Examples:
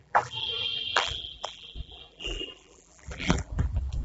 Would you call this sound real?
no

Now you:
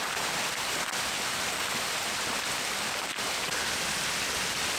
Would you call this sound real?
no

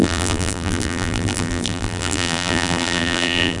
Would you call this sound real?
no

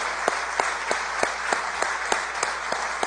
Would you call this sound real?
yes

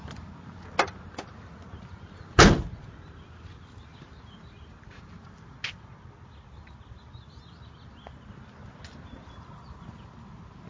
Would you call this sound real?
yes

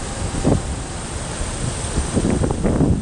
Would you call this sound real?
yes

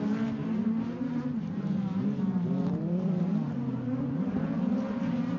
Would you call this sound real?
no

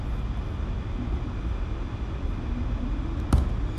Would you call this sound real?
yes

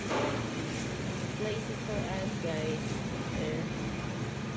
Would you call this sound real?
no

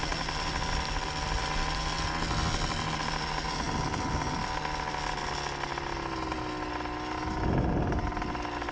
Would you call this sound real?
yes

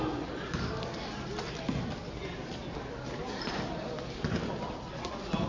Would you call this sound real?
yes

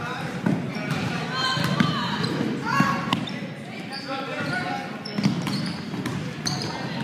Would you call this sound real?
yes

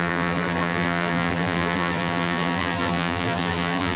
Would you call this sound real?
no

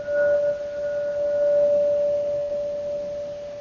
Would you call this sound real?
yes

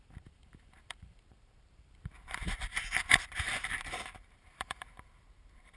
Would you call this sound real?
no